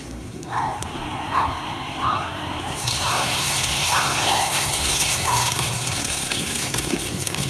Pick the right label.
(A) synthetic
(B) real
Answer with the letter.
A